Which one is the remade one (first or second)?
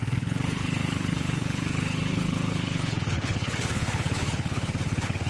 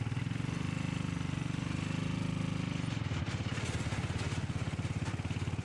first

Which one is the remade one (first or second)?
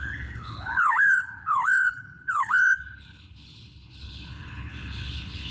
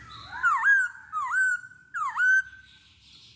first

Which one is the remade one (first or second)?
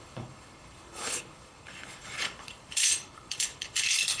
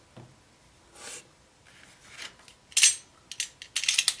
first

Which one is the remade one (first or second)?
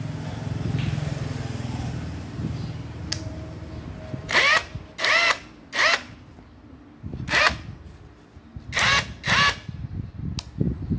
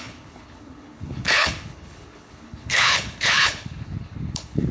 second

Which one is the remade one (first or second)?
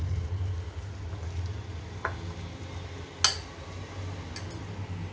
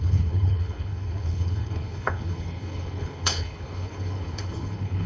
second